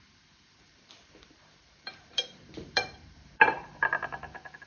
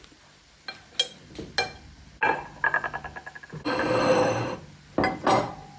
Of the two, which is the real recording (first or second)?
second